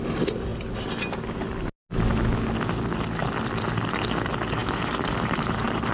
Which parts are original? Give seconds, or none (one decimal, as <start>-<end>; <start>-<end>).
0.0-4.6